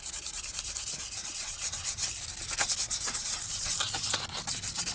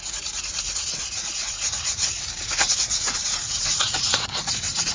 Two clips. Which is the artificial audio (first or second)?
second